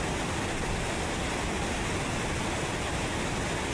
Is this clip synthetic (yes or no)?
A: no